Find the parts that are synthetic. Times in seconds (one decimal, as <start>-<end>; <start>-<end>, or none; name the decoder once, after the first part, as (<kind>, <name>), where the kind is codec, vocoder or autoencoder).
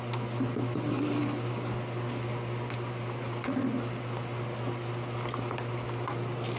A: none